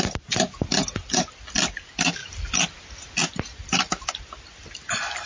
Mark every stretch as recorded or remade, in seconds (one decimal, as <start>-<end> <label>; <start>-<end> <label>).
0.0-5.3 recorded